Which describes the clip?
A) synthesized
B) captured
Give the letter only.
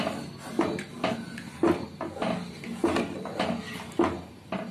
B